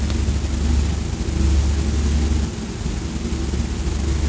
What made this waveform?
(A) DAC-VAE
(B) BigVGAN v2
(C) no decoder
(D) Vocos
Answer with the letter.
C